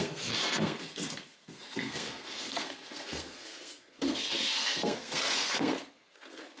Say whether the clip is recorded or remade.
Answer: remade